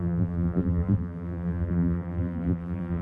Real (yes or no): no